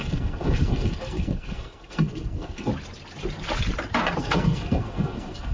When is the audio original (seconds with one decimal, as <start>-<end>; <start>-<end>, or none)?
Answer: 2.7-4.2